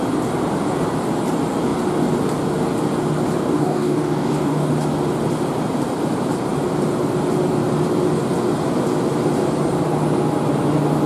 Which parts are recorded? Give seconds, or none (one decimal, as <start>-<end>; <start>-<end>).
0.0-3.4; 4.7-11.1

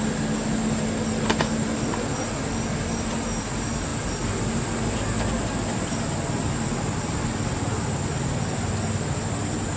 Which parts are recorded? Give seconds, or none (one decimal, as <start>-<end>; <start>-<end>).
0.0-9.8

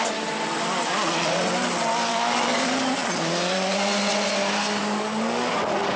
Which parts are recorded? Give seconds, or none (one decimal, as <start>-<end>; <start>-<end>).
0.0-2.1; 2.6-4.8; 5.5-6.0

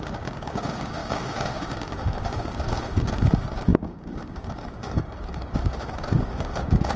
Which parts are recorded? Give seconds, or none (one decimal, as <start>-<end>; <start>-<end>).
none

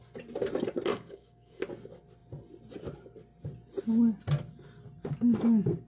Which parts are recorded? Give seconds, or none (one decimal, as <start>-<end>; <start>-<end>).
0.0-0.9; 1.6-5.9

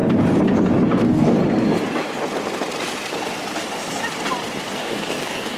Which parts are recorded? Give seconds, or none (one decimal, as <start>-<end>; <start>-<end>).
0.0-0.9; 1.4-4.8

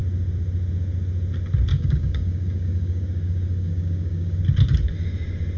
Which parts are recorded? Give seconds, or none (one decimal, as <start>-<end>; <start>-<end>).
0.0-1.7; 4.4-5.6

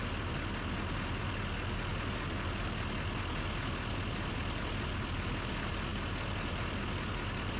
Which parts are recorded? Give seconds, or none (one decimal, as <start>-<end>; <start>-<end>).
0.0-7.6